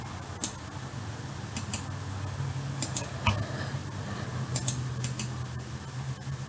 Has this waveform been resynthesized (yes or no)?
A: no